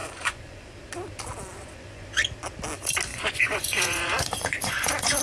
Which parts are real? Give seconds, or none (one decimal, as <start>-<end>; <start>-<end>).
0.7-1.6; 2.2-3.1

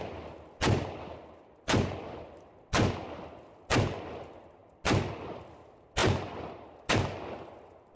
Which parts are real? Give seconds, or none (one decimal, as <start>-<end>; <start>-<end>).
0.0-8.0

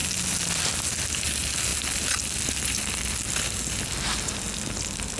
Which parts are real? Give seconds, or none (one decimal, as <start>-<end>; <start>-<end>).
0.0-5.2

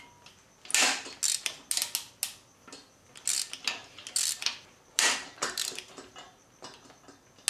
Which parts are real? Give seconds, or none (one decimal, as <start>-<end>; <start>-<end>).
0.0-7.5